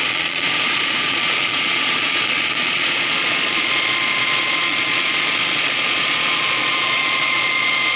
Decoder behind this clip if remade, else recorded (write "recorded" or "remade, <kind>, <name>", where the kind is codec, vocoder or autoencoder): remade, vocoder, Vocos